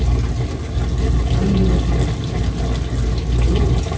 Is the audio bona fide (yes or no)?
yes